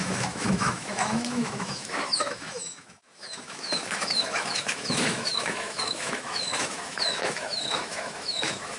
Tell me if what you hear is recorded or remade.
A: remade